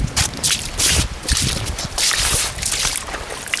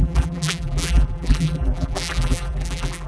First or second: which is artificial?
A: second